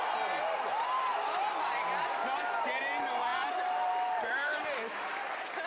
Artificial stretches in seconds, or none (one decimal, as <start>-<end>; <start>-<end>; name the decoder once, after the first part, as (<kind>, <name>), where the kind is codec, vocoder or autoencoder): none